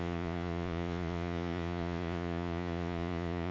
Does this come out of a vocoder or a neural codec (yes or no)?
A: yes